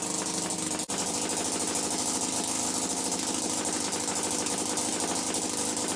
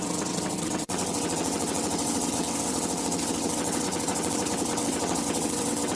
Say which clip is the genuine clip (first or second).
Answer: first